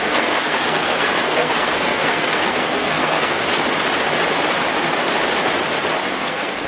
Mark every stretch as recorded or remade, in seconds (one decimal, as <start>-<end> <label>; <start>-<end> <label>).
0.0-3.4 remade; 3.4-6.1 recorded; 6.1-6.7 remade